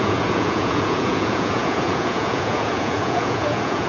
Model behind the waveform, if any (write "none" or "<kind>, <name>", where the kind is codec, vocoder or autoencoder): vocoder, Vocos